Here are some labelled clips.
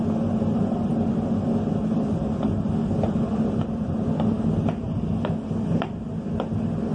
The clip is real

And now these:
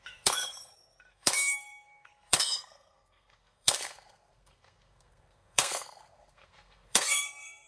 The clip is fake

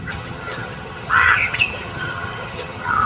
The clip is fake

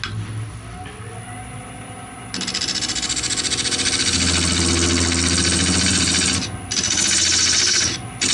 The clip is real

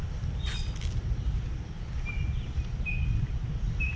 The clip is real